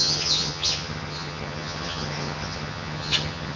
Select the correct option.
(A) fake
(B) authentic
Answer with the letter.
A